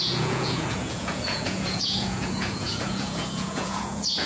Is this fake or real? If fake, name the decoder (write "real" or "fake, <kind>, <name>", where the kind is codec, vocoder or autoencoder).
fake, vocoder, Vocos